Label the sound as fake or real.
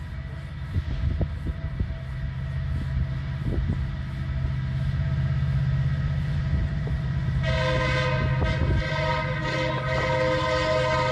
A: real